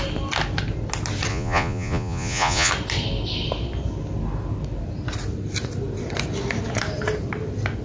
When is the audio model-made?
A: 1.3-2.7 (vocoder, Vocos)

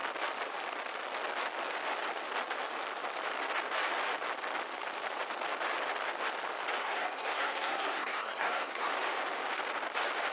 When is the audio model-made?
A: 6.8-8.9 (codec, SNAC)

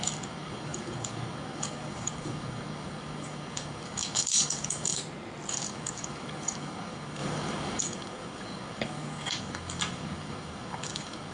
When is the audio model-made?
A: 0.0-5.0 (codec, DAC); 5.5-11.3

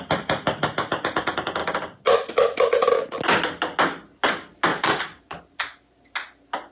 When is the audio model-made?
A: 4.7-5.4 (vocoder, Vocos)

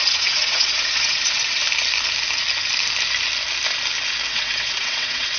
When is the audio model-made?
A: 0.0-1.6 (vocoder, WaveNeXt); 4.3-5.4

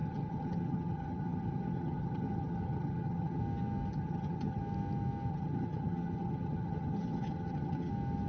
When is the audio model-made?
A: 0.0-3.4 (vocoder, HiFi-GAN); 3.9-4.6; 5.3-7.9